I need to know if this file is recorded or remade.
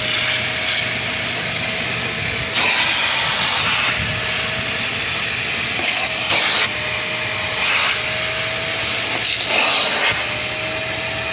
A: recorded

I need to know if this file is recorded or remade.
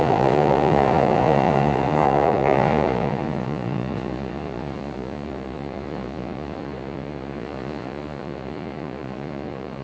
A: remade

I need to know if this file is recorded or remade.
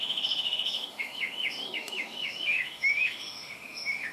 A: remade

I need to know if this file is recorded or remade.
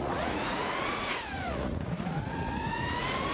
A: remade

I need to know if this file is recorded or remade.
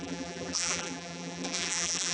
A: remade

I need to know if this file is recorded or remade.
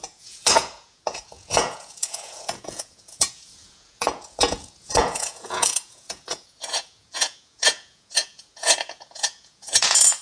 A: remade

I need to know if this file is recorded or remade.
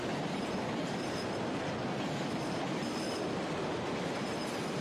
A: recorded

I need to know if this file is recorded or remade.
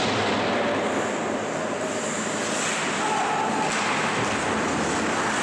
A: recorded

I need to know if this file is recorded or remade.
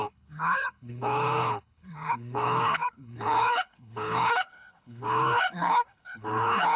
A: remade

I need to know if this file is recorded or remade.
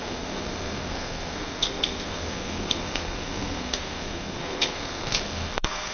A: remade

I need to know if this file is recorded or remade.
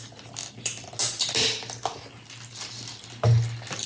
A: recorded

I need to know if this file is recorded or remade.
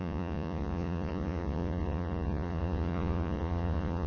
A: remade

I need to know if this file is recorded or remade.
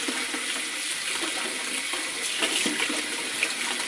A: recorded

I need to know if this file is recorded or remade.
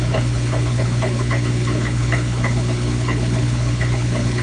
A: remade